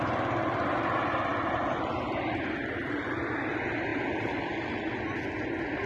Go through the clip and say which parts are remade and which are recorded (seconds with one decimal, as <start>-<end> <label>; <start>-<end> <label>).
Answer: 0.0-1.3 recorded; 1.3-3.2 remade; 3.2-3.9 recorded; 3.9-4.7 remade; 4.7-5.9 recorded